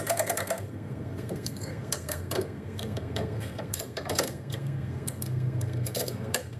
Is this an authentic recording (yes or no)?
no